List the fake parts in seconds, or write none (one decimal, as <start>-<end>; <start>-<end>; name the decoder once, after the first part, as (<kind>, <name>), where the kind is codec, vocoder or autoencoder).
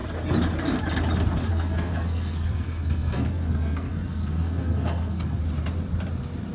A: 1.5-5.4 (codec, SNAC)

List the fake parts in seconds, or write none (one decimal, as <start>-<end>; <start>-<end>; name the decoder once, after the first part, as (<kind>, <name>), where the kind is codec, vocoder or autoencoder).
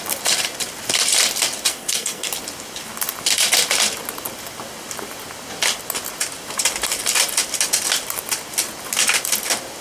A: 1.7-2.3 (codec, SNAC)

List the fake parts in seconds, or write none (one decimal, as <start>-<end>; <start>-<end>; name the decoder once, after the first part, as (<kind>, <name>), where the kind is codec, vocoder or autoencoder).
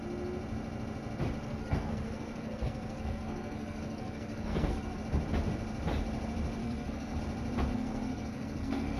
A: 1.4-5.0 (codec, SNAC); 6.6-7.2; 7.7-9.0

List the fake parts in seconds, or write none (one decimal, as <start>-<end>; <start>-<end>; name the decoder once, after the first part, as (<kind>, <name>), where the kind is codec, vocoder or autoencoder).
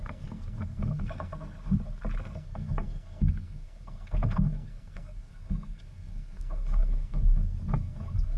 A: 0.0-1.7 (codec, SNAC); 2.2-8.4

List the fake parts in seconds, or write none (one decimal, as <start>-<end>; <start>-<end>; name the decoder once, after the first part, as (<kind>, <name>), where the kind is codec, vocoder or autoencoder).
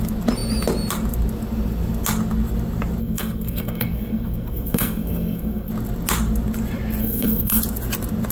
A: 3.0-5.7 (codec, SNAC); 7.0-7.6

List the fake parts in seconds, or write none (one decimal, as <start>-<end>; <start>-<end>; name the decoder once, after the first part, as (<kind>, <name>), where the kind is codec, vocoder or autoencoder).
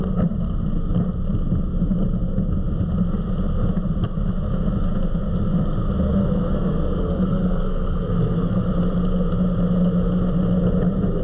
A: 6.2-8.7 (codec, SNAC)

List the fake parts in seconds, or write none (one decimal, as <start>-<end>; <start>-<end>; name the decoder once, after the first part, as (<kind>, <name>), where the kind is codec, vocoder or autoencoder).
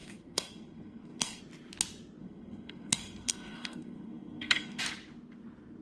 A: 0.0-1.4 (codec, SNAC); 2.2-4.8